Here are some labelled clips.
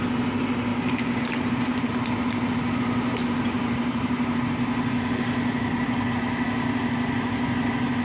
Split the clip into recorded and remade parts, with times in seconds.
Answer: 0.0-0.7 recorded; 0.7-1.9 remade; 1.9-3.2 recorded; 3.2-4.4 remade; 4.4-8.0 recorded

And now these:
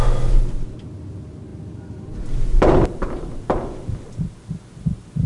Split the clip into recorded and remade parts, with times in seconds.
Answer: 0.0-1.5 recorded; 1.5-4.7 remade; 4.7-5.3 recorded

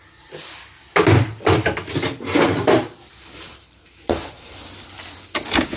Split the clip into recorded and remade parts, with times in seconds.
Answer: 0.0-3.5 recorded; 3.5-4.5 remade; 4.5-5.8 recorded

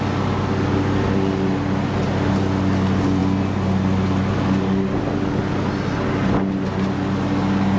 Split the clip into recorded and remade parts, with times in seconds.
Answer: 0.0-7.8 recorded

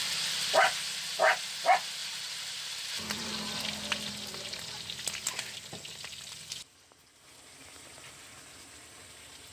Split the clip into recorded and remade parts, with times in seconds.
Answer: 0.0-2.0 recorded; 2.0-3.3 remade; 3.3-9.5 recorded